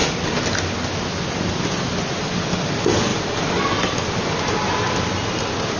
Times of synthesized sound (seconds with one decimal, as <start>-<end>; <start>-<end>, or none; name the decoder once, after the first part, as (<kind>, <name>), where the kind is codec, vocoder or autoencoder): none